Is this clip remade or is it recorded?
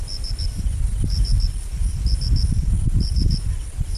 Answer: recorded